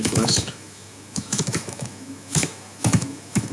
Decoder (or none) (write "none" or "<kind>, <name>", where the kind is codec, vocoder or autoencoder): autoencoder, DAC-VAE